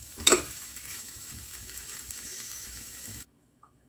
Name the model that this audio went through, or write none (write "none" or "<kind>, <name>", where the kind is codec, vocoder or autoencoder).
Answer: autoencoder, DAC-VAE